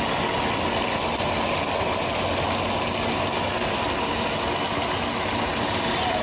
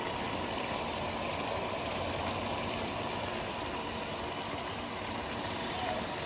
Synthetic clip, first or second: second